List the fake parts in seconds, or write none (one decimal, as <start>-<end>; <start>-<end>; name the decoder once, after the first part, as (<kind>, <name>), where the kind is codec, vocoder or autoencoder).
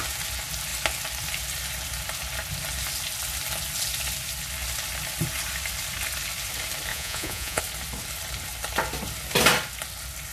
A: 6.9-7.6 (vocoder, Vocos)